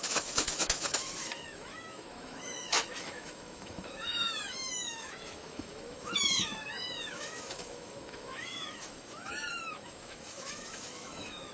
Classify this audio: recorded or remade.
remade